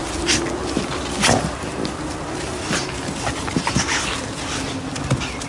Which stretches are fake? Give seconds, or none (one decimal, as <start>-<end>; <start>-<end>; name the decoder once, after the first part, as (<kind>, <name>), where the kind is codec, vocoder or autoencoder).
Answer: none